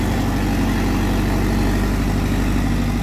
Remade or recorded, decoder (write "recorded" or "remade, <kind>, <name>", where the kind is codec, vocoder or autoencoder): recorded